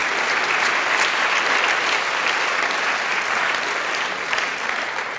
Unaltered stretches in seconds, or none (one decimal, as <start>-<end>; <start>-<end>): 0.0-5.2